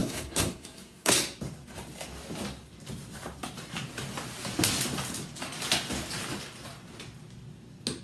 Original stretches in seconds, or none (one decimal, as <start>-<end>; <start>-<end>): 1.1-8.0

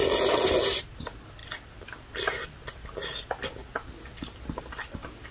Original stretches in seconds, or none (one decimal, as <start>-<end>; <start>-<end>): 0.0-5.3

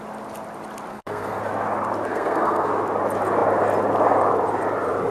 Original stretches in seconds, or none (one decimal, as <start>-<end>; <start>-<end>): 0.0-0.9; 1.4-2.1; 2.7-5.1

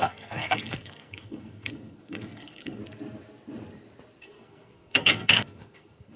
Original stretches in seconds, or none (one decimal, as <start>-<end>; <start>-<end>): 2.8-4.2

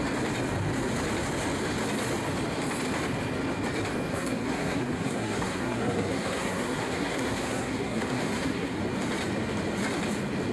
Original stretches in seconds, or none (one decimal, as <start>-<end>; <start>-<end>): 0.0-4.1; 8.8-10.5

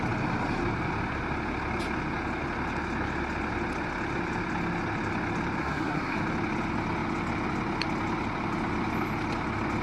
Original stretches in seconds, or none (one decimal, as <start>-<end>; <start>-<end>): 0.0-5.6; 6.2-9.8

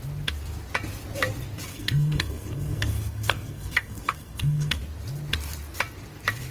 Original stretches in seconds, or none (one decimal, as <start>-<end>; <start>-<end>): 0.0-1.7; 4.8-6.5

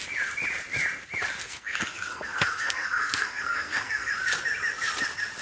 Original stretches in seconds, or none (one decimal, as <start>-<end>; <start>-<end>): 0.0-1.4; 4.1-5.4